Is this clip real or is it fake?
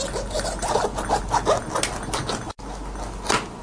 real